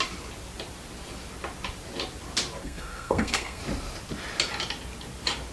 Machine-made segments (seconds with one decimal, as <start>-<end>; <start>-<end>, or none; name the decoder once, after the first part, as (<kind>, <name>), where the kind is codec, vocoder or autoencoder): 2.6-3.6 (codec, SNAC)